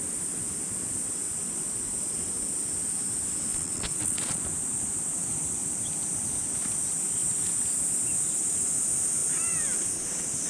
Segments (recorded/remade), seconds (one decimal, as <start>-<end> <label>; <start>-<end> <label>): 0.0-3.5 recorded; 3.5-4.4 remade; 4.4-10.5 recorded

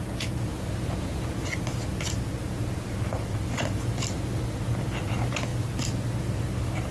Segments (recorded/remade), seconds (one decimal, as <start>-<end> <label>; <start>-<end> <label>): 0.0-6.9 recorded

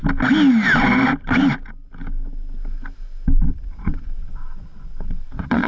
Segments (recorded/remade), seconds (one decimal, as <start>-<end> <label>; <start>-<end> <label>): 0.0-3.4 recorded; 3.4-5.7 remade